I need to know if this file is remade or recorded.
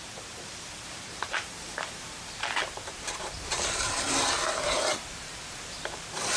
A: remade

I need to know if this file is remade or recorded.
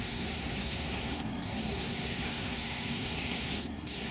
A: remade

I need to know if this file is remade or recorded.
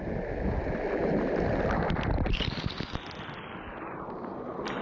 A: recorded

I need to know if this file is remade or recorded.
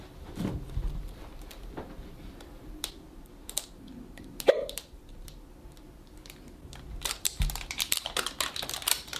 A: remade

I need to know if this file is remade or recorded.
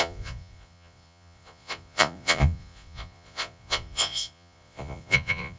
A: remade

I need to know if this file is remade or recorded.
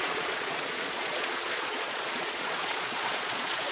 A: remade